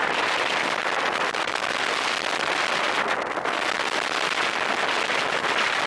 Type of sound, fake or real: real